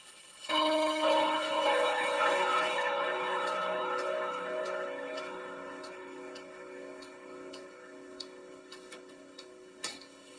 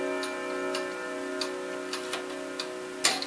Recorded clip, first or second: second